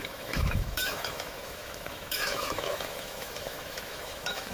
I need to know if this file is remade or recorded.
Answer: remade